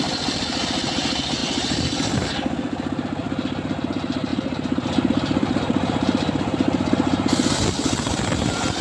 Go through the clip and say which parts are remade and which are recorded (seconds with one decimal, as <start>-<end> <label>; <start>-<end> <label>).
0.0-1.4 recorded; 1.4-2.2 remade; 2.2-3.2 recorded; 3.2-3.8 remade; 3.8-4.3 recorded; 4.3-8.2 remade; 8.2-8.8 recorded